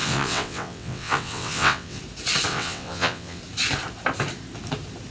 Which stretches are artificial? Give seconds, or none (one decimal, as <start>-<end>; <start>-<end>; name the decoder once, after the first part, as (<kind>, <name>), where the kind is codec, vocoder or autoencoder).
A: 0.0-2.0 (vocoder, WaveNeXt); 2.5-3.4